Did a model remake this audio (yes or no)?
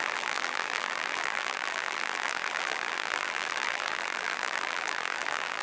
yes